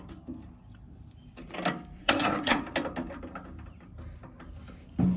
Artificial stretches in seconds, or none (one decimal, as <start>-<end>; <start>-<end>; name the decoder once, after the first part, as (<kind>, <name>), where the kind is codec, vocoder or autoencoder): 2.0-2.6 (codec, SNAC)